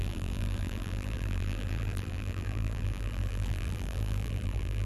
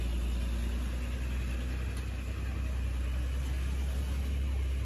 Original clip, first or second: second